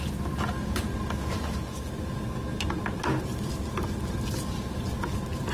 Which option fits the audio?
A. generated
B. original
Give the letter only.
B